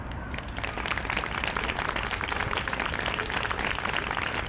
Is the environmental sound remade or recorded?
recorded